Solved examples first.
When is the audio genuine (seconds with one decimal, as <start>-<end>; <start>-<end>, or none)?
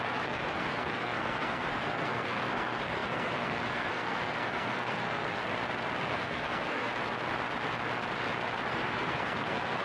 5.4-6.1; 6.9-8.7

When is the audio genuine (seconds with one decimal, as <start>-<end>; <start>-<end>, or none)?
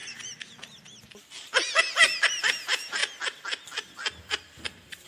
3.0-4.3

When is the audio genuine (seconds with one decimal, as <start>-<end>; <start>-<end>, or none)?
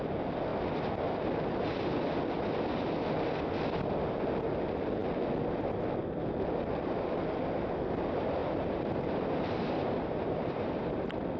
0.0-8.4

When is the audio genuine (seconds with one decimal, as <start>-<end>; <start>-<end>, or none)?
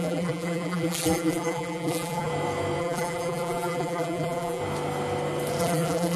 2.3-2.8; 4.6-5.6